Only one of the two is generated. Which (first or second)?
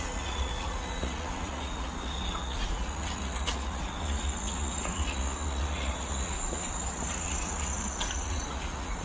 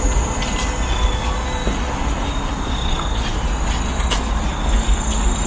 first